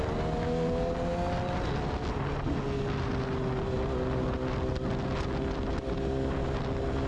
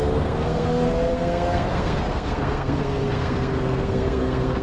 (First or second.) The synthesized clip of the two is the second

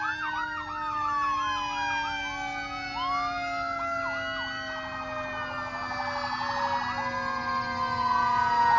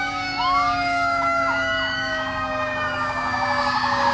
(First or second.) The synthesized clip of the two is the second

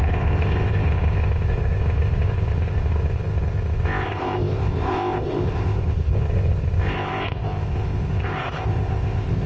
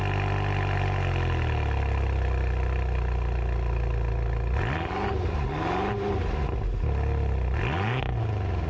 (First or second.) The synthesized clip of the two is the first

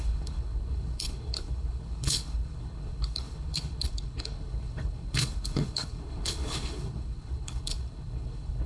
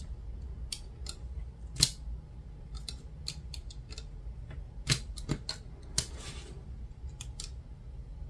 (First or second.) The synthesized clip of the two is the first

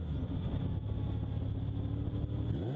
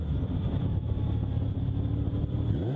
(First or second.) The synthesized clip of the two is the second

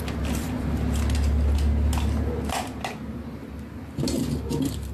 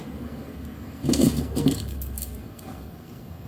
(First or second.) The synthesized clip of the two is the second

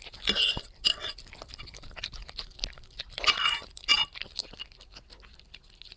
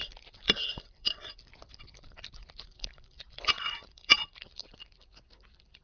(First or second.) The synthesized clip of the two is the second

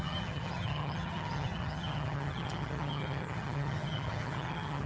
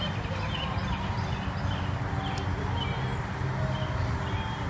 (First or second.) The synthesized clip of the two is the first